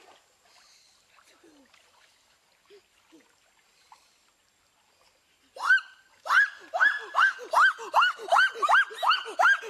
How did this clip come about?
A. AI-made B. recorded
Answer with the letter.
B